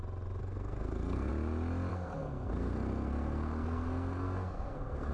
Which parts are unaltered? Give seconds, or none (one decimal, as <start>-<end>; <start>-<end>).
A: 0.0-0.4; 1.3-1.9